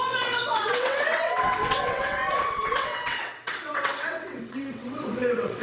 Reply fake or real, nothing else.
fake